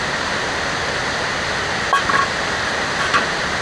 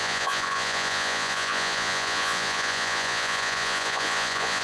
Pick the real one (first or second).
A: first